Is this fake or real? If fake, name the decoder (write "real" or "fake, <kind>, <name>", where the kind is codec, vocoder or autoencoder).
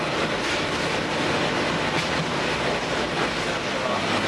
real